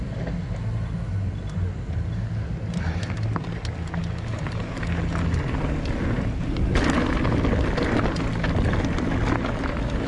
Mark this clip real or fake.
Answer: real